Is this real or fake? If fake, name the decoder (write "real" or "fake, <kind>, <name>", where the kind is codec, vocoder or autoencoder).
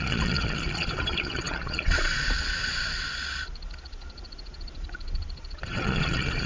fake, vocoder, Vocos